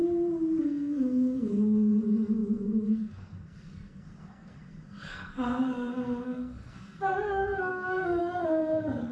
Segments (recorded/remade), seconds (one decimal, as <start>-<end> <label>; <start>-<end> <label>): 0.0-0.6 recorded; 0.6-9.1 remade